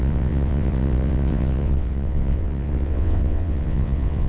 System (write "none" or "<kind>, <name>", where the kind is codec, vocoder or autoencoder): vocoder, WaveNeXt